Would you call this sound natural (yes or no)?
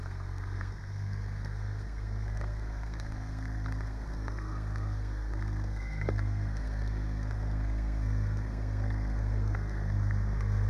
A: no